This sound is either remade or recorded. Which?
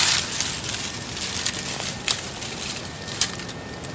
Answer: recorded